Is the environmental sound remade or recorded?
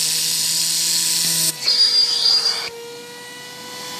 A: recorded